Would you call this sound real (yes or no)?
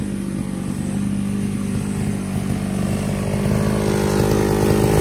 yes